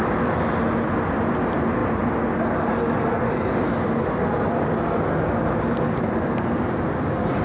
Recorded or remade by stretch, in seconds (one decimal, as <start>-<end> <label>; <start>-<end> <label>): 0.0-7.4 recorded